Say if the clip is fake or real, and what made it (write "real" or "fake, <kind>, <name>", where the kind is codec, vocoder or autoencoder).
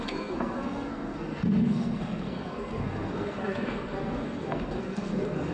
fake, codec, SNAC